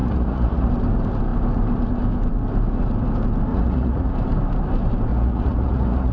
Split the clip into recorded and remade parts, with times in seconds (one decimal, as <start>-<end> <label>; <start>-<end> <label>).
0.0-0.7 remade; 0.7-3.5 recorded; 3.5-4.1 remade; 4.1-5.1 recorded; 5.1-6.1 remade